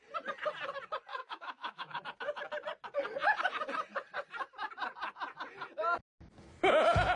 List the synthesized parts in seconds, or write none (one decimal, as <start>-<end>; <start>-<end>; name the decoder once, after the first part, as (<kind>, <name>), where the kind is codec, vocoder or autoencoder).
1.1-2.0 (autoencoder, DAC-VAE)